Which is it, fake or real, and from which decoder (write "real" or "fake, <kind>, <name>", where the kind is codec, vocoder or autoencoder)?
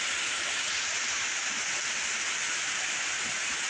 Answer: real